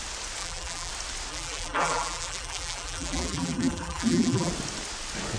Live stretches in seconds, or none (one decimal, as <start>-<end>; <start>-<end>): 0.0-0.4; 0.9-1.3; 4.5-5.4